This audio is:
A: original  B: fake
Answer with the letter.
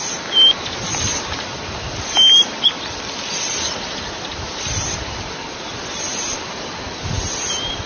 A